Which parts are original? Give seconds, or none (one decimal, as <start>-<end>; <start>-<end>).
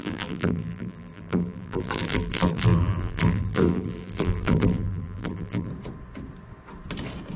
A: 5.7-7.4